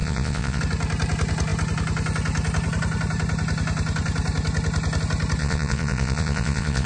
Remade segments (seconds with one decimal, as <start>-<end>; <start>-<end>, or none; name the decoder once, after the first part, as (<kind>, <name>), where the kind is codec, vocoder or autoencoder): 0.0-0.6 (vocoder, Vocos); 5.4-6.9